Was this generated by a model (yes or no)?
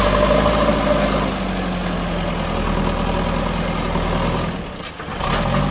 no